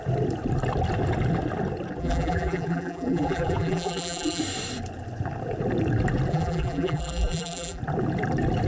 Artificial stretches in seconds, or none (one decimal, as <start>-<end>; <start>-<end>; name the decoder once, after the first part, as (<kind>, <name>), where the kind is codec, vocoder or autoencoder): 2.0-4.4 (vocoder, BigVGAN v2); 6.3-7.8